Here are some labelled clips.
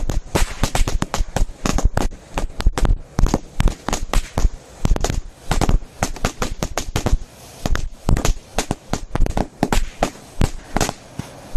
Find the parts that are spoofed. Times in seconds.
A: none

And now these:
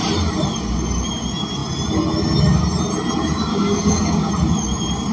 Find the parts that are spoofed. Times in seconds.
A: 3.5-4.3 (codec, DAC)

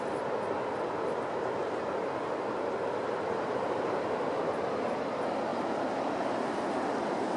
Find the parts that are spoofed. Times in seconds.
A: none